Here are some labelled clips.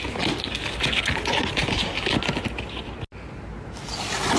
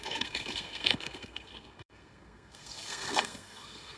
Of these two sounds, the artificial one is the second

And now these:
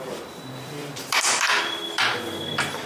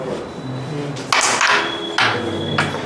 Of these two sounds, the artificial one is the first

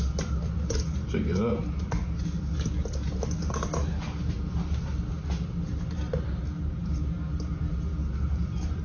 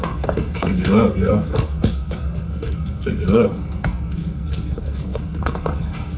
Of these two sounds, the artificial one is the second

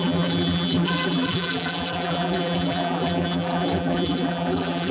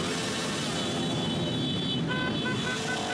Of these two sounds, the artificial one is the first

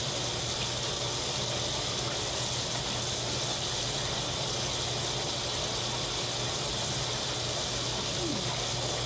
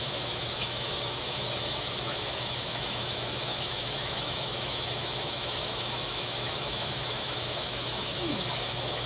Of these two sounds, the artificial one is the second